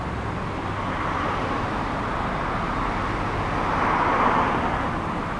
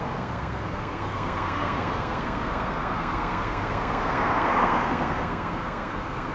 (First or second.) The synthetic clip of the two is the second